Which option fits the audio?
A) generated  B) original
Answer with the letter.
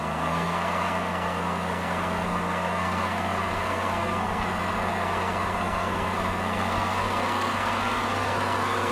A